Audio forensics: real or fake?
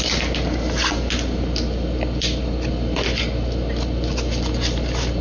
real